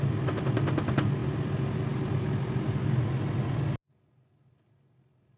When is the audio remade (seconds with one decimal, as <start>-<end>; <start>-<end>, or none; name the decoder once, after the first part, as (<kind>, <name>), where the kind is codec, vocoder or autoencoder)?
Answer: none